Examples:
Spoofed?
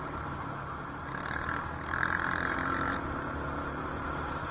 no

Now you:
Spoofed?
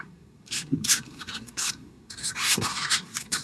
yes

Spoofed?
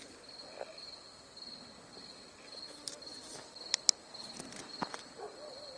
no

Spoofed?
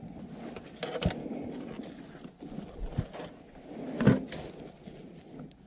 no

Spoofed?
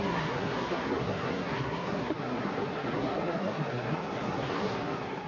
yes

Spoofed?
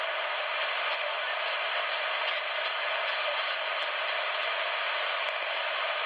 no